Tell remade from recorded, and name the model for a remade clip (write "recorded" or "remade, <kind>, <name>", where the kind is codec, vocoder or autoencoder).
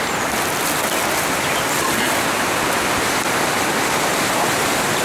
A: recorded